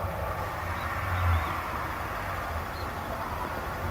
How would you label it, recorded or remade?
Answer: recorded